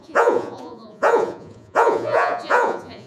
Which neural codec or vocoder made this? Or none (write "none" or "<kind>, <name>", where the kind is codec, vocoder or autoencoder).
vocoder, Vocos